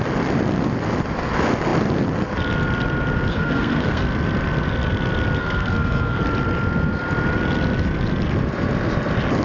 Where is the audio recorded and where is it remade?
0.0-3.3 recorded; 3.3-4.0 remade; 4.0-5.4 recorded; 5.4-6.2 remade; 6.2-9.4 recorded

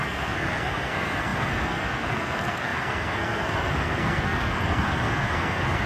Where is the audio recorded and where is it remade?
0.0-5.9 remade

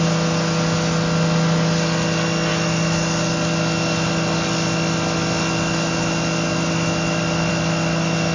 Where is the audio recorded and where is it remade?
0.0-8.3 recorded

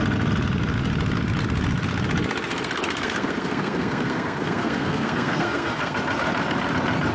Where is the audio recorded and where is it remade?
0.0-2.5 recorded; 2.5-6.0 remade; 6.0-7.1 recorded

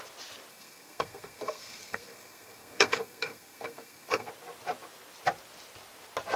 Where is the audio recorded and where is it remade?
0.0-0.5 recorded; 0.5-4.3 remade; 4.3-6.4 recorded